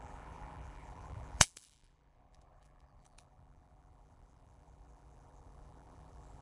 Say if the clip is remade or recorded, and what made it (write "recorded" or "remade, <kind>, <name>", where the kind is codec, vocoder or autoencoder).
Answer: remade, vocoder, BigVGAN v2